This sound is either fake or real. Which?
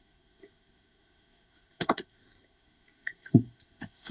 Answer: fake